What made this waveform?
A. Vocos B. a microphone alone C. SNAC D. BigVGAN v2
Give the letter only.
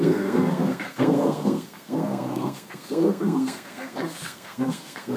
C